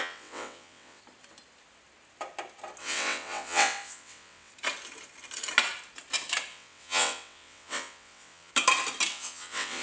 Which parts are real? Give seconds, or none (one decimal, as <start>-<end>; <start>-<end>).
1.0-2.8; 4.5-6.5; 8.5-9.1